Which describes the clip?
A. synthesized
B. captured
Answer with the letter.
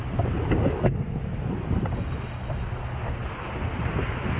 B